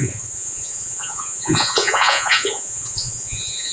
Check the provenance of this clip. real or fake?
fake